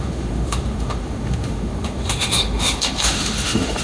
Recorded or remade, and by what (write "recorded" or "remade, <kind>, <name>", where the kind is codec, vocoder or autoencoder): remade, autoencoder, DAC-VAE